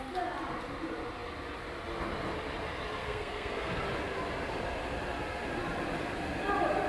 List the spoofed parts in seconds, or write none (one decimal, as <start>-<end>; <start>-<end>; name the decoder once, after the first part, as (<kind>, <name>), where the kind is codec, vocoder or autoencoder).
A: 3.0-3.8 (codec, SNAC)